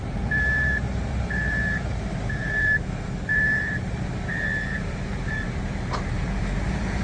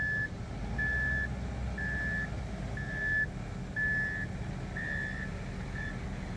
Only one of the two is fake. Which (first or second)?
first